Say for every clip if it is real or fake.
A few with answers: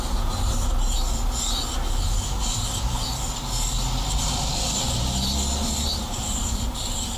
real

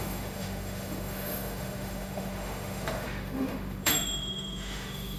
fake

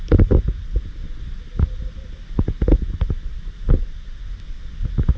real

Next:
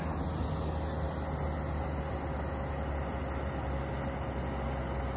real